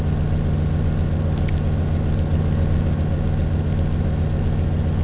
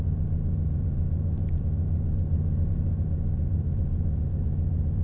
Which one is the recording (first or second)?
first